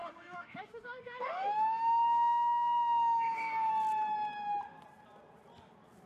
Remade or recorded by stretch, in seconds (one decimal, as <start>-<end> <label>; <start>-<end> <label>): 0.0-3.7 remade; 3.7-6.1 recorded